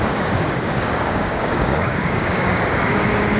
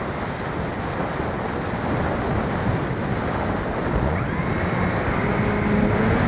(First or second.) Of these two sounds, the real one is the second